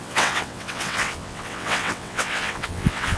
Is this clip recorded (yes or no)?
no